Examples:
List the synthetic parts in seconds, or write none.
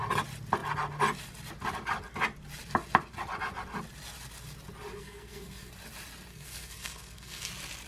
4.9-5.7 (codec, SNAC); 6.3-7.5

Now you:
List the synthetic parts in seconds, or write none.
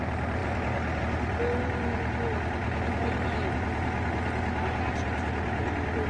none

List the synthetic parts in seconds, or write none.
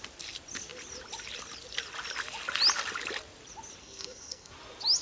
3.8-4.5 (codec, SNAC)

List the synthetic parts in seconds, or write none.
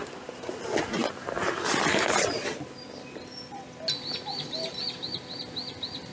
none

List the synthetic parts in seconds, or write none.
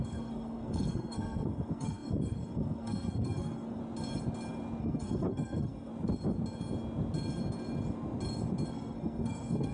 0.0-3.8 (codec, SNAC); 4.8-5.9; 8.7-9.7